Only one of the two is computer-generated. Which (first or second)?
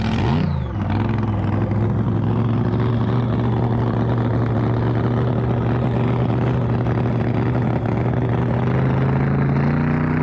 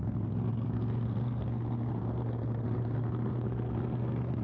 second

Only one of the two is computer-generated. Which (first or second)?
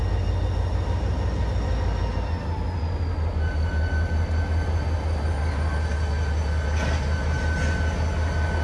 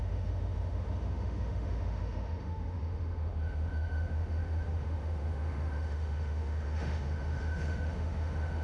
second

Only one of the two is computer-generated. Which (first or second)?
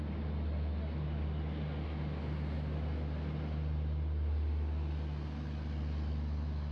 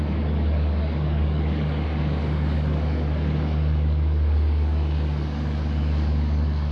second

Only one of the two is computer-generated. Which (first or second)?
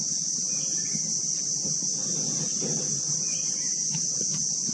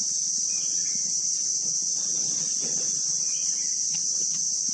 second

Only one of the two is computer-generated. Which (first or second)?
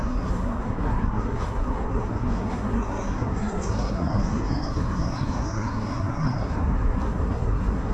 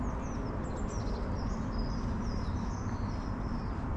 first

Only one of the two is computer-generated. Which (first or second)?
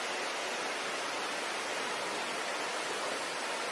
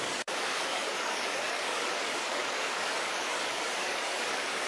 second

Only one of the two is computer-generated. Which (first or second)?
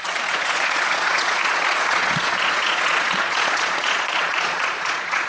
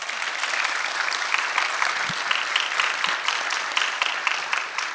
first